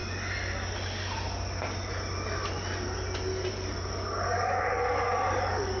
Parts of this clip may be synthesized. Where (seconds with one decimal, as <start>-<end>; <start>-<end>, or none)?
3.5-5.8